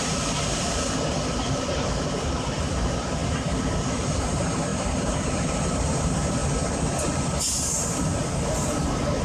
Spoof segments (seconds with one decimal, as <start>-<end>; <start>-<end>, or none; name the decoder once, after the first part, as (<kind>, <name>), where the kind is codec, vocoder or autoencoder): 0.0-6.4 (vocoder, BigVGAN v2); 8.5-9.2

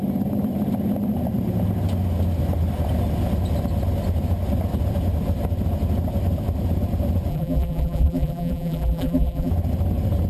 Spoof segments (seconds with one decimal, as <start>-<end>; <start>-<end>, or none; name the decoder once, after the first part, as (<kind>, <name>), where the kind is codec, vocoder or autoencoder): 7.3-9.5 (vocoder, BigVGAN v2)

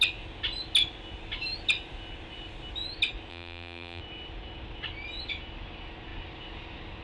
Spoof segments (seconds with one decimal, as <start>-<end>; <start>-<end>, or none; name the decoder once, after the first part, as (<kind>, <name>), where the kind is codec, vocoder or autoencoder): 3.3-4.0 (vocoder, BigVGAN v2)

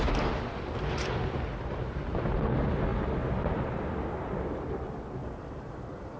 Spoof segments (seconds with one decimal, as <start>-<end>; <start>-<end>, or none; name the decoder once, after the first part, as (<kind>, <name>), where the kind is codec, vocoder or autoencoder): 5.2-6.2 (vocoder, BigVGAN v2)

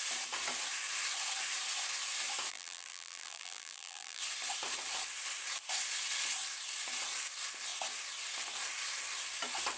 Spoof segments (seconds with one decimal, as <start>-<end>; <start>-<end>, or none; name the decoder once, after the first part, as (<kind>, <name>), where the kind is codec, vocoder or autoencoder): 2.5-4.2 (vocoder, BigVGAN v2)